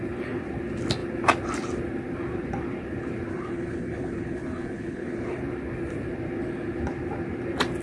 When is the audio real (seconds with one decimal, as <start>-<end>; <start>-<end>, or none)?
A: 0.0-3.3; 5.4-7.8